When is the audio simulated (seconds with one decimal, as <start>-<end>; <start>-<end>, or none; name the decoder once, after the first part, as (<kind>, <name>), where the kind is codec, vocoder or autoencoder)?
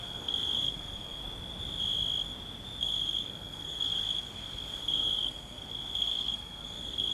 0.0-1.2 (codec, SNAC); 2.8-7.1